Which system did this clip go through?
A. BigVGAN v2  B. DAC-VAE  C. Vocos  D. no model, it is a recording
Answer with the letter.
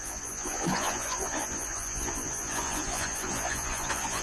C